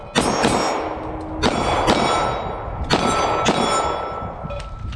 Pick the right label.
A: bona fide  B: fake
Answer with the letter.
A